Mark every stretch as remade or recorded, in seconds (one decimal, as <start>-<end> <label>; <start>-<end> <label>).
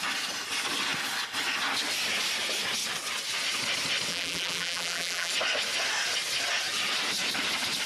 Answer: 0.0-4.1 recorded; 4.1-5.3 remade; 5.3-7.9 recorded